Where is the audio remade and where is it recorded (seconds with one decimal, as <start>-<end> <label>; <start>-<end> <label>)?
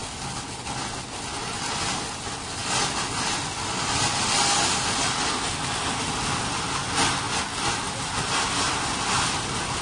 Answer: 0.0-9.8 recorded